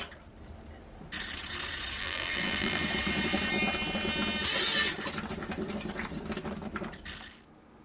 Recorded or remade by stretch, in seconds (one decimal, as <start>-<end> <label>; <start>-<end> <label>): 0.0-2.0 recorded; 2.0-2.8 remade; 2.8-7.8 recorded